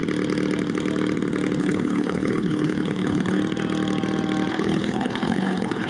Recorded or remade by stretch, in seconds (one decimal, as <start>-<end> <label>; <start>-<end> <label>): 0.0-1.6 recorded; 1.6-3.4 remade; 3.4-4.5 recorded; 4.5-5.9 remade